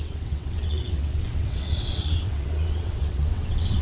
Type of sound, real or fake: fake